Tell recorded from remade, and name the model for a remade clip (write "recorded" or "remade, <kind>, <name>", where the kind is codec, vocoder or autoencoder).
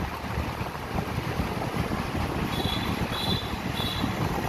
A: recorded